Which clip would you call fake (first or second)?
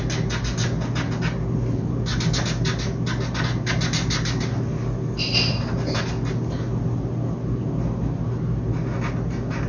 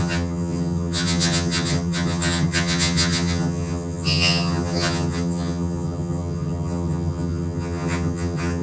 second